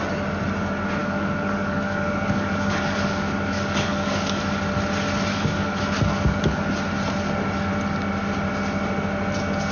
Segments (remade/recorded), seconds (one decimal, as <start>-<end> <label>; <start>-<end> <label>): 0.0-1.0 recorded; 1.0-4.4 remade; 4.4-5.3 recorded; 5.3-6.7 remade; 6.7-9.7 recorded